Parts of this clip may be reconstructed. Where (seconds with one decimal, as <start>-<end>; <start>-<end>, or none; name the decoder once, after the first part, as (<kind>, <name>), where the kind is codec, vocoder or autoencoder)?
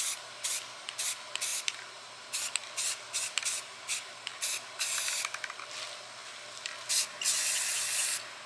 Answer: none